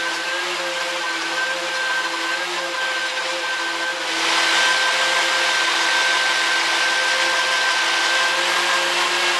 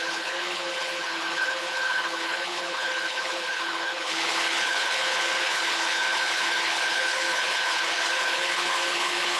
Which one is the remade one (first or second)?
second